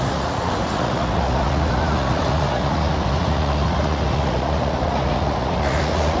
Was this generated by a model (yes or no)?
yes